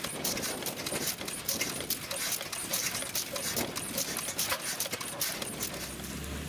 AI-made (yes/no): no